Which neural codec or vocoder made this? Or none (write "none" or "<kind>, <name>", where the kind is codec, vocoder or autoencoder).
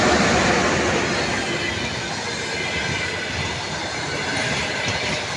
none